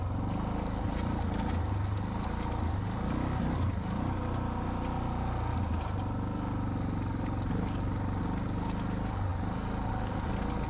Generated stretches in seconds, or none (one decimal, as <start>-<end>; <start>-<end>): none